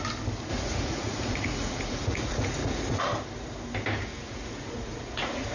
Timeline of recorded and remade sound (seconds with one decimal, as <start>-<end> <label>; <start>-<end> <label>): 0.0-0.5 recorded; 0.5-3.0 remade; 3.0-4.1 recorded; 4.1-5.5 remade